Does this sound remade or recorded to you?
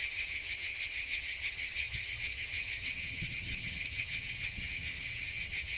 remade